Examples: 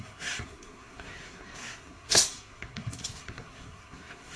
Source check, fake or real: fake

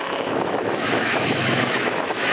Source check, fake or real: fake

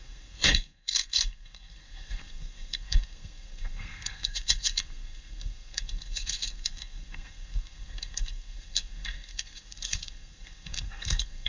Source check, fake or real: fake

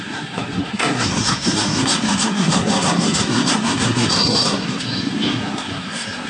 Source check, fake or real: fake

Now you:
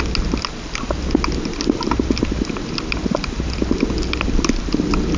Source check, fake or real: real